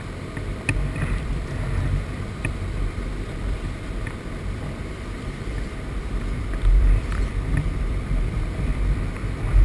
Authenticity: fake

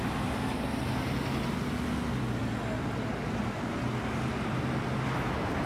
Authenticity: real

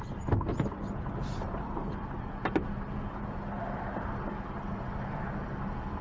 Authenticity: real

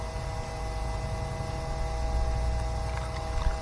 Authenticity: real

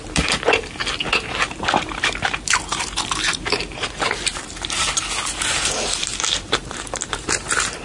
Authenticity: fake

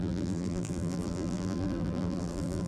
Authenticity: fake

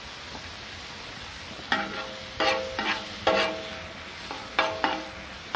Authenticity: real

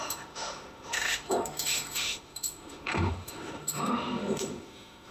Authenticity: fake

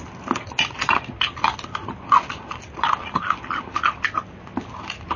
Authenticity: real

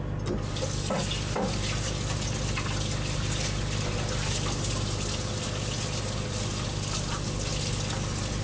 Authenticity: real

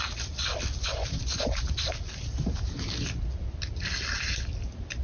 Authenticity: real